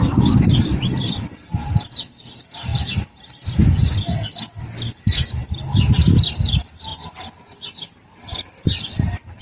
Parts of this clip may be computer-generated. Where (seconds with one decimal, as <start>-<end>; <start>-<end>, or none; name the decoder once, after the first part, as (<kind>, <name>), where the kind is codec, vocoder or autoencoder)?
0.0-3.6 (vocoder, BigVGAN v2); 5.2-6.9